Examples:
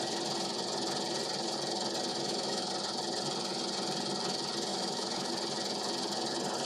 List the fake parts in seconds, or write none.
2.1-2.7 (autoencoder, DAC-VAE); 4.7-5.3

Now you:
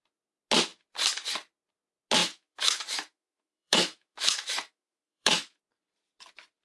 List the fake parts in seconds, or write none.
2.2-5.6 (autoencoder, DAC-VAE)

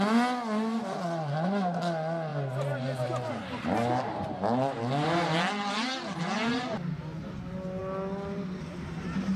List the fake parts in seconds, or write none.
none